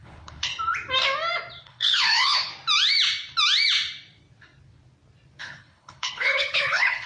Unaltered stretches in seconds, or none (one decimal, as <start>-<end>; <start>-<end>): 0.5-1.6; 2.5-5.4